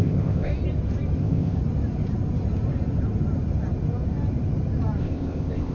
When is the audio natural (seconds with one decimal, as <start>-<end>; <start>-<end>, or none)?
0.5-1.2; 1.6-5.0